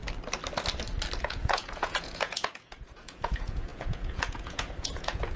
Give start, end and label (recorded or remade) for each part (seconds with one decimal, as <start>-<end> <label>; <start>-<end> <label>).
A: 0.0-1.2 recorded; 1.2-5.4 remade